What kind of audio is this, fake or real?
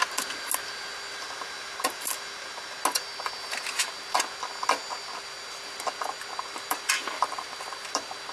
real